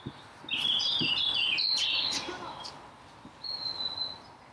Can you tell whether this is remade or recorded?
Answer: recorded